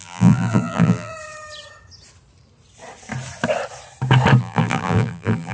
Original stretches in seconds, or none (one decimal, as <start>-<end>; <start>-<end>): 1.1-4.4